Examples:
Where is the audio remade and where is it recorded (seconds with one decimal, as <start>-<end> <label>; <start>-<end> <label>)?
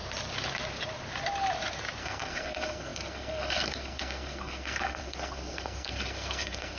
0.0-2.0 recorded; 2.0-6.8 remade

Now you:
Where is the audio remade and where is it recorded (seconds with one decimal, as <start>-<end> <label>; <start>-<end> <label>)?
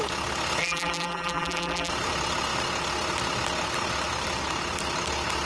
0.0-0.6 recorded; 0.6-1.9 remade; 1.9-5.5 recorded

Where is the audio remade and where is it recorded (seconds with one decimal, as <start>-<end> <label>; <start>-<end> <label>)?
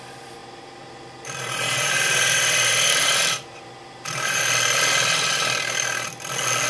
0.0-0.4 recorded; 0.4-4.4 remade; 4.4-6.7 recorded